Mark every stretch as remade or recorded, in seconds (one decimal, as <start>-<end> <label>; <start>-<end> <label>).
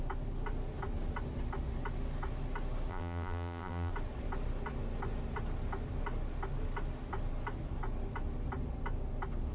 0.0-2.9 recorded; 2.9-3.9 remade; 3.9-9.5 recorded